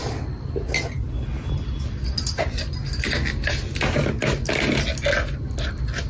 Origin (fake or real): real